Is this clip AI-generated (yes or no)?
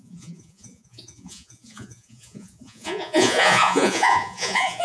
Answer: yes